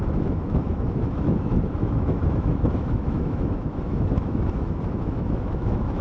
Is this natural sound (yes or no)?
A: no